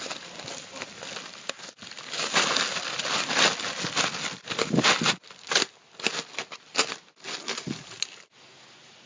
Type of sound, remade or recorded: recorded